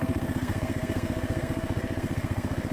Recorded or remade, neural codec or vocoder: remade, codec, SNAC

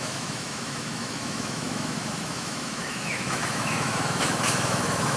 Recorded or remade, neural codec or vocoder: remade, autoencoder, DAC-VAE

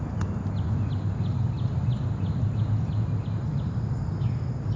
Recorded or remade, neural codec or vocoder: recorded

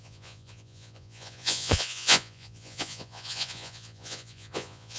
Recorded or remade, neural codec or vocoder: remade, vocoder, Vocos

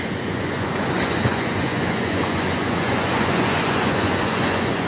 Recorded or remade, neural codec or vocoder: remade, vocoder, Vocos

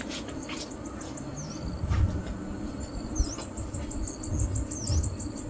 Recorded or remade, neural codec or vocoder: recorded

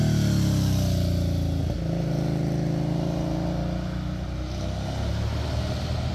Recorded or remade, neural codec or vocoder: recorded